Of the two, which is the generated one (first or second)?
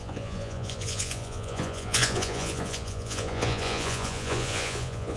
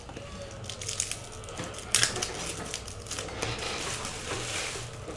first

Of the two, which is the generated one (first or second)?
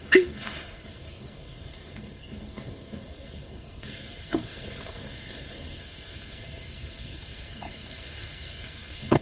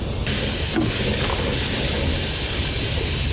first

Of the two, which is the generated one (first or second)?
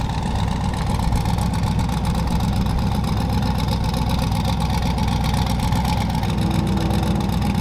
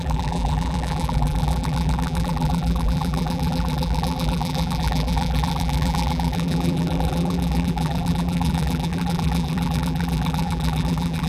second